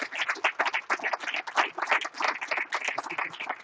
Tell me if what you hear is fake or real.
real